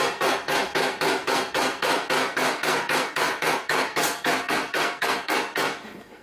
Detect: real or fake fake